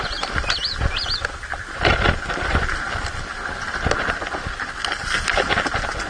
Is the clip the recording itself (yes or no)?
yes